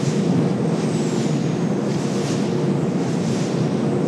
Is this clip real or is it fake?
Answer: real